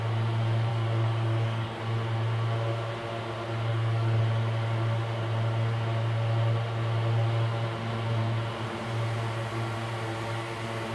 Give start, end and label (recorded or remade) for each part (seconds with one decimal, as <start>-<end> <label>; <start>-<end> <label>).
0.0-0.7 recorded; 0.7-1.8 remade; 1.8-3.7 recorded; 3.7-4.2 remade; 4.2-10.9 recorded